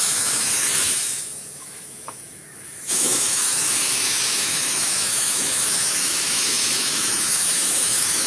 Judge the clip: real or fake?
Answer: fake